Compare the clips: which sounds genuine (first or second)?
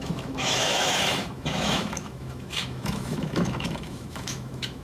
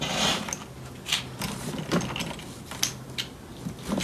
second